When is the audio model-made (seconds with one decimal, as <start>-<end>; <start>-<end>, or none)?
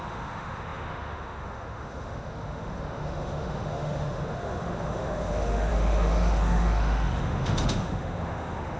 0.0-8.8